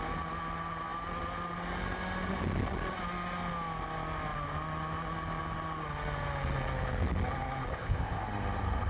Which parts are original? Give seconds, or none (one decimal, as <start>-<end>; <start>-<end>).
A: 0.0-7.7; 8.2-8.9